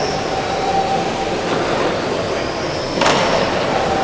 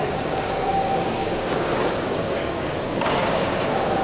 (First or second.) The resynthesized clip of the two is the second